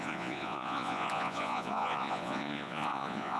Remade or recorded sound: remade